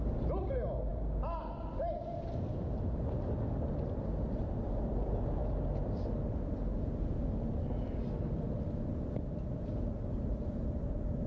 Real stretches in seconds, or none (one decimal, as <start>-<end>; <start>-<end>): 0.0-11.3